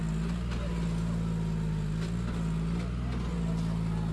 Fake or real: real